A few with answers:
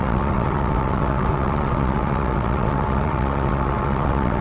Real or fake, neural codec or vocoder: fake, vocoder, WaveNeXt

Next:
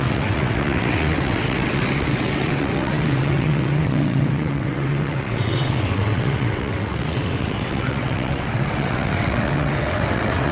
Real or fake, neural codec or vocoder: fake, vocoder, WaveNeXt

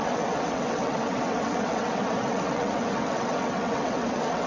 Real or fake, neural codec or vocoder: fake, vocoder, WaveNeXt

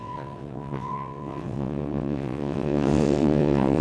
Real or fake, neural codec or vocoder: fake, vocoder, WaveNeXt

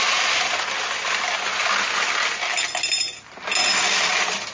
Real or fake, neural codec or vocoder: real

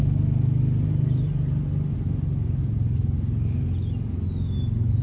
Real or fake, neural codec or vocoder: real